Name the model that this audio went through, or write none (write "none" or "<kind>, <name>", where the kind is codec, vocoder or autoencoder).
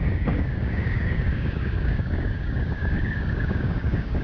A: codec, DAC